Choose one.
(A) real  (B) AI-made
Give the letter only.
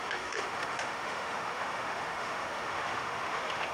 B